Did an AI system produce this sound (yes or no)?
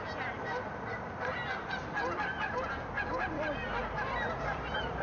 yes